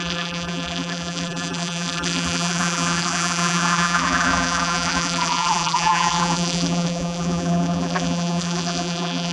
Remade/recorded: remade